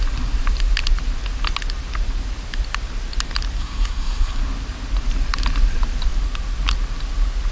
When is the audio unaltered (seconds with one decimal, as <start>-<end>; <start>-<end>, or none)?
0.0-3.6; 4.4-7.5